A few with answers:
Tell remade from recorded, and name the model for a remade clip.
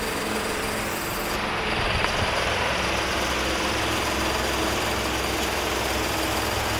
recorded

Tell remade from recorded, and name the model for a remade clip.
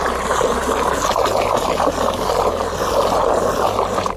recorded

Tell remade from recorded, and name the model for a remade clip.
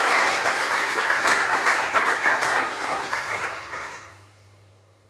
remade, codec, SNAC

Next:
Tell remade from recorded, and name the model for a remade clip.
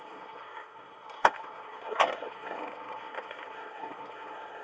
remade, codec, SNAC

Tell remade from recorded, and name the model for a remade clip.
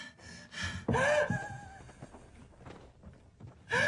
recorded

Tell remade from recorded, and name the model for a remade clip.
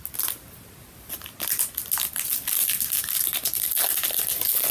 recorded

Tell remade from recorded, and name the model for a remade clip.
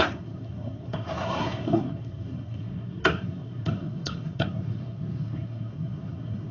remade, codec, SNAC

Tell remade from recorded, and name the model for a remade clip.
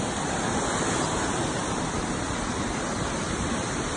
recorded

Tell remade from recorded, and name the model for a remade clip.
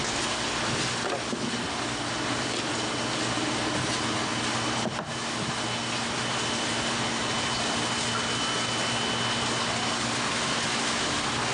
recorded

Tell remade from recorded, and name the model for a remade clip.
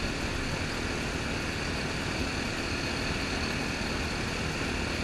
recorded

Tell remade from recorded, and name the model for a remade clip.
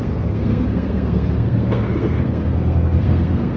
remade, codec, SNAC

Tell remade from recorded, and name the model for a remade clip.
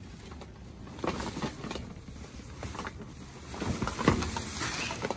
recorded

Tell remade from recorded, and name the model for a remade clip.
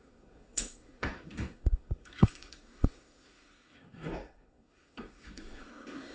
remade, codec, SNAC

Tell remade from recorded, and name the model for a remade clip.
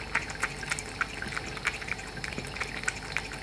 recorded